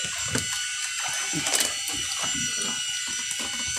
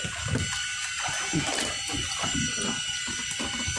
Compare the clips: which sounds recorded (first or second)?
first